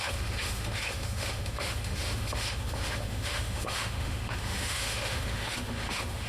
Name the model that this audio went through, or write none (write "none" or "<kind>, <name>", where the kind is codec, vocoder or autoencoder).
autoencoder, DAC-VAE